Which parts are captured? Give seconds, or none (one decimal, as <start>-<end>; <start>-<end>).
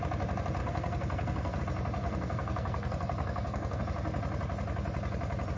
0.0-0.6; 1.6-2.0; 3.8-5.6